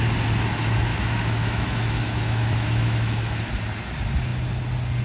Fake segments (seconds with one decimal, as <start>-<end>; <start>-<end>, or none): 0.9-3.5